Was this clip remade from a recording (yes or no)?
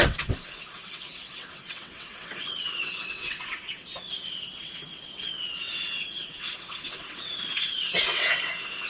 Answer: yes